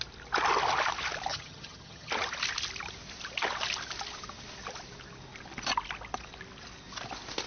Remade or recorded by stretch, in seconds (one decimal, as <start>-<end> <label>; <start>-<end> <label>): 0.0-1.3 recorded; 1.3-2.1 remade; 2.1-7.5 recorded